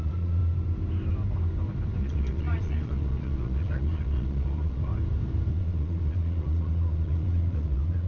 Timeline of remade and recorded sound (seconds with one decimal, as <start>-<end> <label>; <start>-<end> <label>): 0.0-0.4 remade; 0.4-2.0 recorded; 2.0-4.9 remade; 4.9-5.5 recorded; 5.5-8.1 remade